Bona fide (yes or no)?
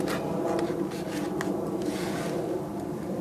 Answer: yes